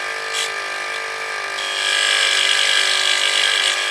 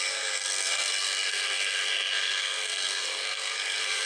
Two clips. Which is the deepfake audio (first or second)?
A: second